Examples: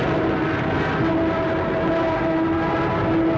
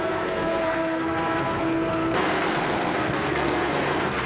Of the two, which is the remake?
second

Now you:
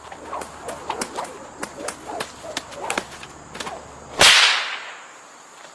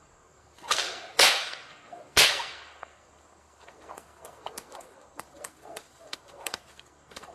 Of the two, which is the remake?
second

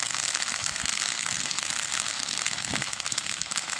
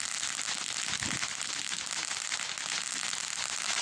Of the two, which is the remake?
first